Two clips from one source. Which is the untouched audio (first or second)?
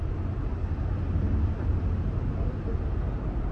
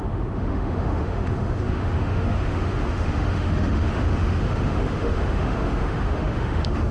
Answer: first